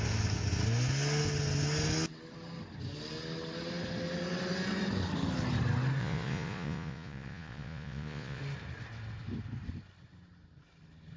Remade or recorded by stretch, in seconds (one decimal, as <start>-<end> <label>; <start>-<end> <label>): 0.0-6.0 recorded; 6.0-8.4 remade; 8.4-11.2 recorded